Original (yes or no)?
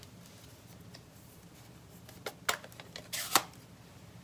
yes